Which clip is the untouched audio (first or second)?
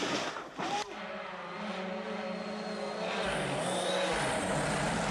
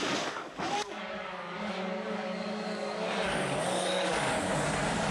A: first